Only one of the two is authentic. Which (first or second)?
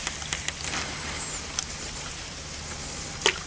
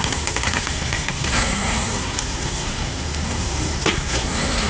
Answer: first